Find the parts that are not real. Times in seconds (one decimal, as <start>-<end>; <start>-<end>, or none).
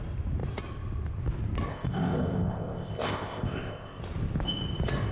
1.7-4.0